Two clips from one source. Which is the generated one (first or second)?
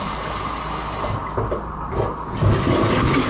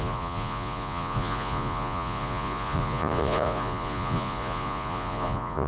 second